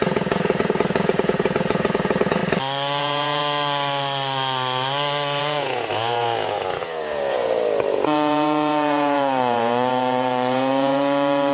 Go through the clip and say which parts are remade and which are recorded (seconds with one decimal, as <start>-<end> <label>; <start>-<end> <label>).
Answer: 0.0-2.4 remade; 2.4-3.0 recorded; 3.0-3.4 remade; 3.4-5.4 recorded; 5.4-11.5 remade